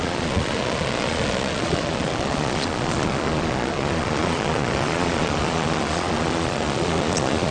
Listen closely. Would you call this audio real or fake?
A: fake